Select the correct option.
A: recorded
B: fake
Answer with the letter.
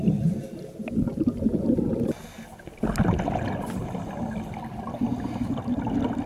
A